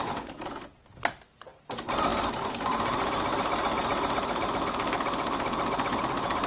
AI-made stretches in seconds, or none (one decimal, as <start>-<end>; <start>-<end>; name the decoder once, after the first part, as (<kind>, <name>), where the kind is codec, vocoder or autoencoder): none